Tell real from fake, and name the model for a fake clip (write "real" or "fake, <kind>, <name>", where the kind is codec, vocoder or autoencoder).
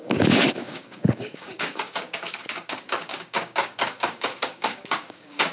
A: fake, codec, DAC